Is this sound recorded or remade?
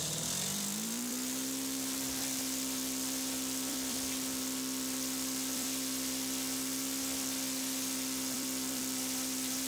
remade